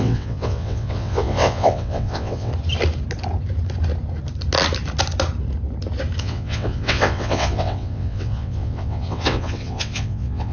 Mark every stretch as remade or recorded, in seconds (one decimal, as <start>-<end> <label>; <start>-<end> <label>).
0.0-2.5 remade; 2.5-6.2 recorded; 6.2-10.5 remade